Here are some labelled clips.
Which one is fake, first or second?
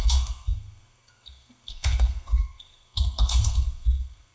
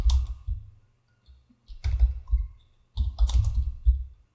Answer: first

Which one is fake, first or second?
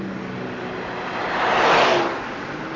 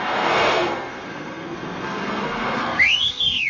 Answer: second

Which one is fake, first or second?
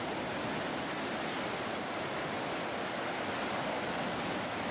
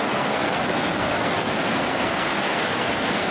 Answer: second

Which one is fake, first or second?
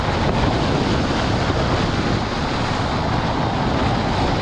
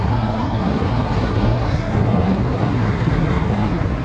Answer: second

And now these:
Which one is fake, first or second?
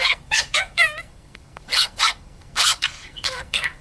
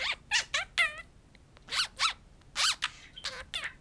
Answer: first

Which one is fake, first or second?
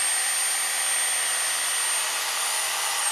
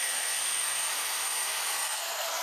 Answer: second